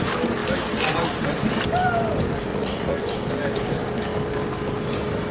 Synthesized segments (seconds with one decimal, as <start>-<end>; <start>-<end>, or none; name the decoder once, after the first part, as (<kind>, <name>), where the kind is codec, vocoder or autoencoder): 2.5-3.0 (vocoder, Vocos)

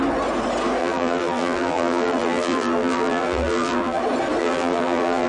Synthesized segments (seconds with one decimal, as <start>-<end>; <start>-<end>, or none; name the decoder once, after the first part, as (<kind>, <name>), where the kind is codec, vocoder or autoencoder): 0.8-4.0 (vocoder, BigVGAN v2); 4.4-5.3

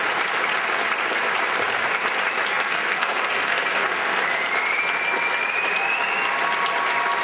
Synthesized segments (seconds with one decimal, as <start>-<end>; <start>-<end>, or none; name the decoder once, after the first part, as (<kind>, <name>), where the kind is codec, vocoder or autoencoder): 2.5-4.1 (codec, SNAC)